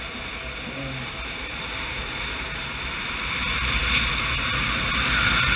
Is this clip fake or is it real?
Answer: real